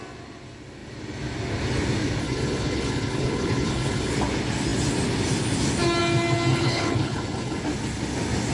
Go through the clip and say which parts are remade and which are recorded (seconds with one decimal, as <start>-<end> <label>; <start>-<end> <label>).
0.0-2.2 recorded; 2.2-4.1 remade; 4.1-6.5 recorded; 6.5-7.6 remade; 7.6-8.5 recorded